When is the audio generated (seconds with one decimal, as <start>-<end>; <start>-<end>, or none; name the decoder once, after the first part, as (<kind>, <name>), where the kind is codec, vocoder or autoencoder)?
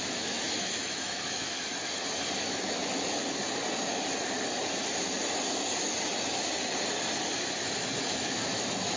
0.0-1.7 (autoencoder, DAC-VAE); 2.4-3.2; 8.1-9.0